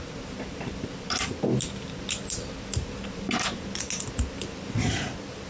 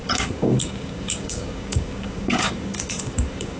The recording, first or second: first